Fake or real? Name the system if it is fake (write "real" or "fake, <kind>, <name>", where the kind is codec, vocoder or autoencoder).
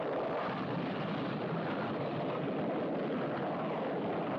real